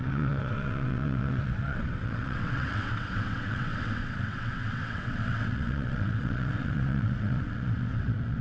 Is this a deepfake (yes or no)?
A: yes